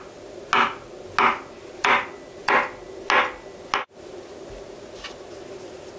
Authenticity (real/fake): real